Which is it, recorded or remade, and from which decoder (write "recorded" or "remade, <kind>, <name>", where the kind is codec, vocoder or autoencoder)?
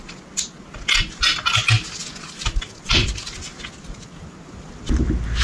recorded